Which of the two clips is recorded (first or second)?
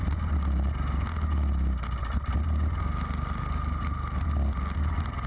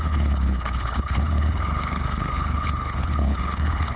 first